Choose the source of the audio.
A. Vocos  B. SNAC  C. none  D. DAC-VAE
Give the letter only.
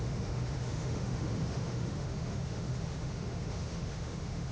D